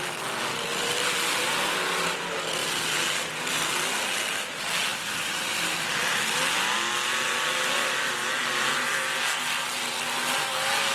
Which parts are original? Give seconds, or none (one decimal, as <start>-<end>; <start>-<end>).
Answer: 0.0-10.9